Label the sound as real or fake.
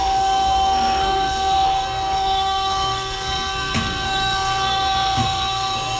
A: fake